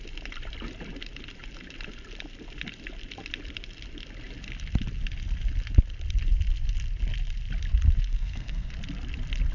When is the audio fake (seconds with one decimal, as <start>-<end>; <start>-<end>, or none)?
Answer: 8.1-8.7